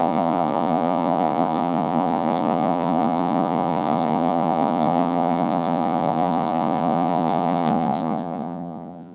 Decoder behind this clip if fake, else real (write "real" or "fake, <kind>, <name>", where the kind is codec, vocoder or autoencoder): fake, vocoder, Vocos